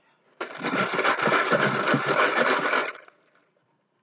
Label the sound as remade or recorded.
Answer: remade